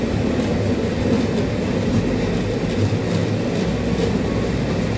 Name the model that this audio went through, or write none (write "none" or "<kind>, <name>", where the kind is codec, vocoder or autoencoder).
none